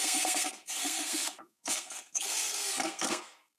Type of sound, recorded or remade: remade